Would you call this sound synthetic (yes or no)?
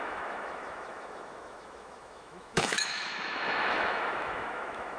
yes